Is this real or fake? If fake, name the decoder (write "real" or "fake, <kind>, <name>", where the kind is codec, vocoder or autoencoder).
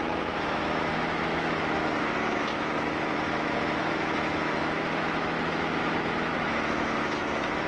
fake, autoencoder, DAC-VAE